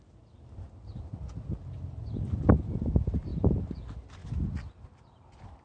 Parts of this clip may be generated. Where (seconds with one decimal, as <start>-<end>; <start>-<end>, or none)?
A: none